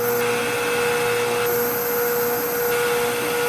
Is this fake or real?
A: real